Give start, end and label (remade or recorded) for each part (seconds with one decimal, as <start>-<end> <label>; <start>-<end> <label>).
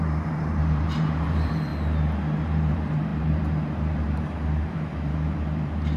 0.0-1.7 remade; 1.7-2.4 recorded; 2.4-6.0 remade